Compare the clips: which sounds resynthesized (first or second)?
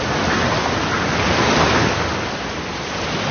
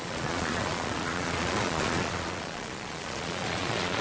second